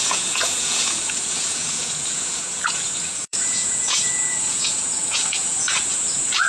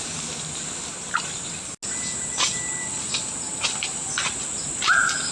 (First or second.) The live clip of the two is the second